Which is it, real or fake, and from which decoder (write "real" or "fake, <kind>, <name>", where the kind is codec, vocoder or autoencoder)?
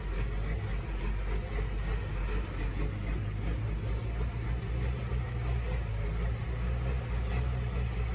real